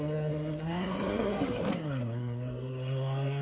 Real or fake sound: fake